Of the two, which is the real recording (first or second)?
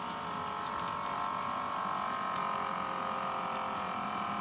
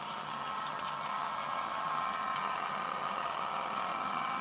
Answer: first